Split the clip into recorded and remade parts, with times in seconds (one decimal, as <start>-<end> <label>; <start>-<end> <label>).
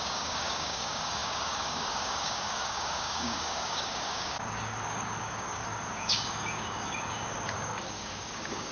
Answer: 0.0-8.7 remade